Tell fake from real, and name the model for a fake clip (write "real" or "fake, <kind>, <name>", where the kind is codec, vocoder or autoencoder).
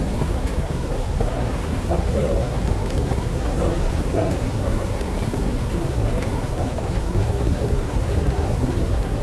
fake, codec, SNAC